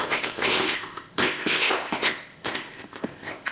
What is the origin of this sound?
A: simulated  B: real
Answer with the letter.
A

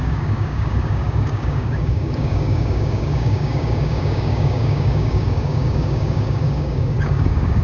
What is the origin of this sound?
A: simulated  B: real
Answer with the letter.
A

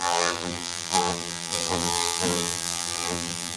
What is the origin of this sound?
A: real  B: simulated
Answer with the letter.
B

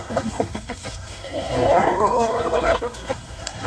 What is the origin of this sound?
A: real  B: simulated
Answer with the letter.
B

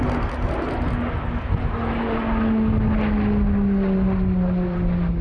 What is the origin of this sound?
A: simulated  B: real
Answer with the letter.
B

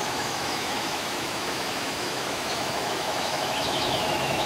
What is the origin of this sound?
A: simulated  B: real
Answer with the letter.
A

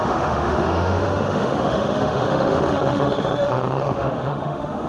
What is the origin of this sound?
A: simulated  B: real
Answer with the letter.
A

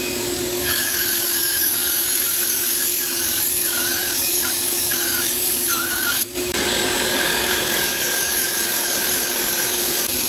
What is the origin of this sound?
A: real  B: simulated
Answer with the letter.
B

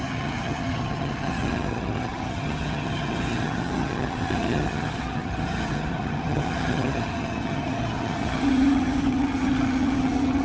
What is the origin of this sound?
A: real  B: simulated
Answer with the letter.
B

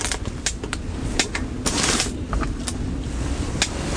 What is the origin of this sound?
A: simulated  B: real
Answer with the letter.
B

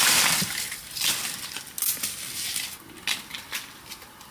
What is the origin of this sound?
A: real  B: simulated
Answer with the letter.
A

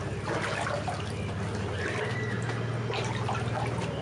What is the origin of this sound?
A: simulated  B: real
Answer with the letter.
B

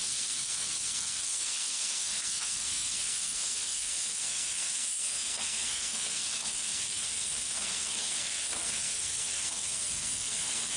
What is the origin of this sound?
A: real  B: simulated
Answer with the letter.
B